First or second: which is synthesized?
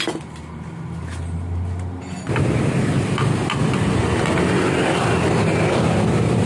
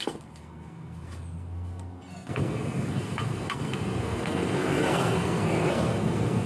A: second